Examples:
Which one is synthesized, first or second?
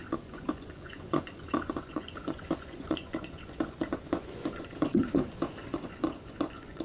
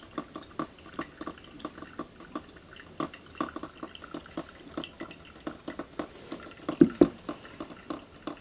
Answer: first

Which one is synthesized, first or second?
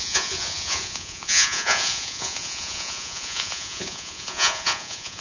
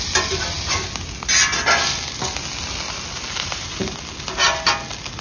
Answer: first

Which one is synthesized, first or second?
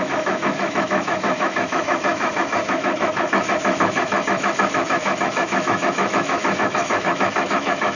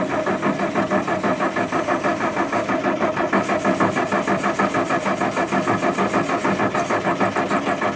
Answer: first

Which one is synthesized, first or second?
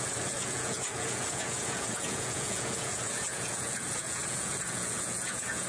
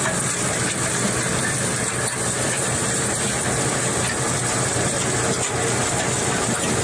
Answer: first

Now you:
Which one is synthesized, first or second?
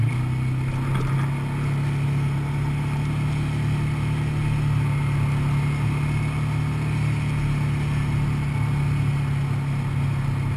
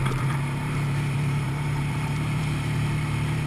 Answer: second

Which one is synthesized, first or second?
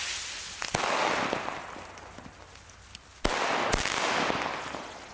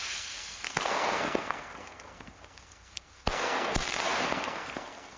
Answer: second